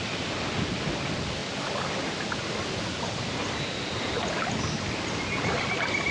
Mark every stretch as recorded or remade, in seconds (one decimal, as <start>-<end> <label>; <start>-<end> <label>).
0.0-6.1 recorded